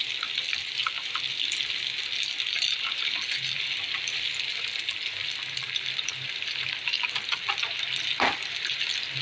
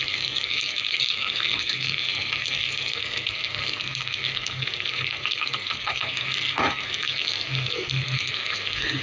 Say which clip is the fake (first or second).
second